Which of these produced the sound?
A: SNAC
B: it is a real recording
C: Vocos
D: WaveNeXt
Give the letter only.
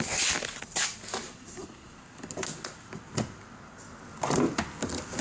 B